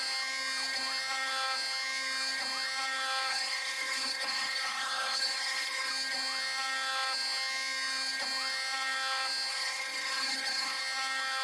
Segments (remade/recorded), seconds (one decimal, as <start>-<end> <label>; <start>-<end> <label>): 0.0-3.3 recorded; 3.3-5.9 remade; 5.9-9.5 recorded; 9.5-10.8 remade; 10.8-11.4 recorded